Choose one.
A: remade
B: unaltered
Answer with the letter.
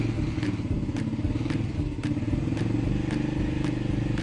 B